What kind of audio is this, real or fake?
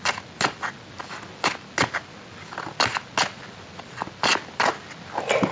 real